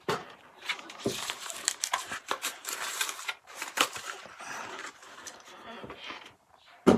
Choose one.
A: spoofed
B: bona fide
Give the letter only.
A